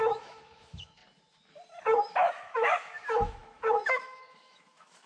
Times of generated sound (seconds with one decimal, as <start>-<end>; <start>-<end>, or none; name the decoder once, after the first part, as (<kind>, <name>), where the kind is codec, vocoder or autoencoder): 0.0-1.0 (autoencoder, DAC-VAE); 2.1-5.1